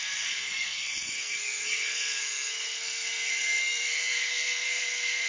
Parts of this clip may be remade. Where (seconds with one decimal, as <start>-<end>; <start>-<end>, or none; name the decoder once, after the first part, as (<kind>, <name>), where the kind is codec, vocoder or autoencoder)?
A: 0.0-5.3 (codec, SNAC)